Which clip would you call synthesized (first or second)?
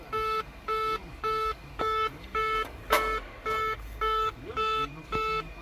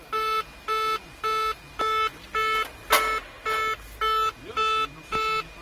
first